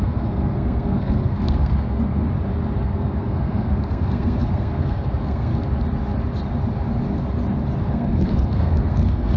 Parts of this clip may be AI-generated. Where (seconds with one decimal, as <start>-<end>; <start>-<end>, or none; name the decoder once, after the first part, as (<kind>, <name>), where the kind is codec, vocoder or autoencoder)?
0.0-2.2 (codec, SNAC); 2.8-5.5; 7.9-9.4